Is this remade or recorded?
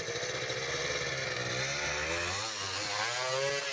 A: recorded